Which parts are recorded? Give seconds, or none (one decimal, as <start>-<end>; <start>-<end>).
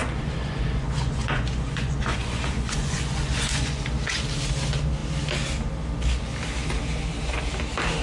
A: 3.8-8.0